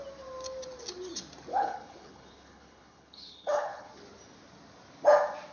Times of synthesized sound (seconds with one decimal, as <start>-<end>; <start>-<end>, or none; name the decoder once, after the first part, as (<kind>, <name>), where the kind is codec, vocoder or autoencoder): 1.5-3.9 (codec, HILCodec)